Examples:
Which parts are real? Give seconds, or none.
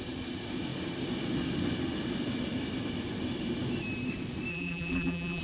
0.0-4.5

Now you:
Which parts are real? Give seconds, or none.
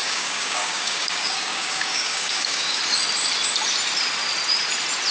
2.8-5.1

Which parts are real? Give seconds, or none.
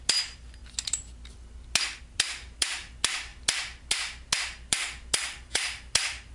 0.6-2.0; 3.3-4.4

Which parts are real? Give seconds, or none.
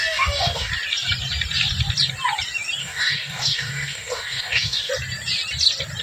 0.7-2.8; 4.9-6.0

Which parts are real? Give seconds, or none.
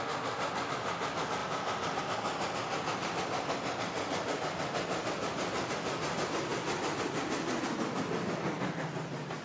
0.0-9.4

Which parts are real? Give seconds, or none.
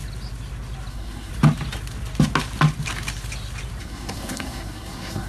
0.0-0.9; 1.3-3.8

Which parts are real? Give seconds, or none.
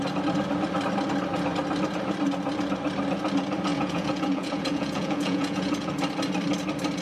0.0-3.7; 5.9-7.0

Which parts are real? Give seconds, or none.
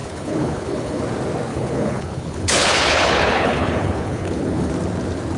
1.0-1.5; 4.7-5.4